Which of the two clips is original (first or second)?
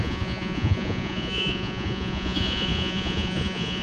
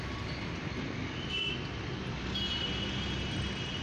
second